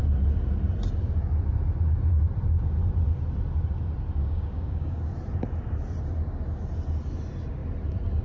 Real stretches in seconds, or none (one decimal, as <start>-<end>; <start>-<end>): 0.0-4.2; 5.0-8.2